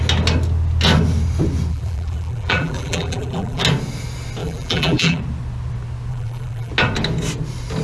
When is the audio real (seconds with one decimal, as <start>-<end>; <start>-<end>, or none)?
0.0-1.7; 3.6-4.4; 5.2-6.1; 6.7-7.8